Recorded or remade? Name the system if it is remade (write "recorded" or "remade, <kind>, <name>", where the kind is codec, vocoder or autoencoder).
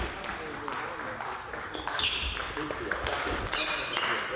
recorded